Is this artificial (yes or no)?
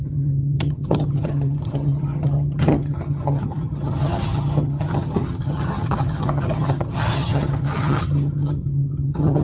yes